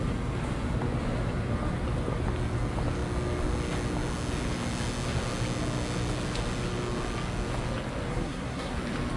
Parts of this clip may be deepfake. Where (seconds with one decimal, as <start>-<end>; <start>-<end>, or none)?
8.1-8.7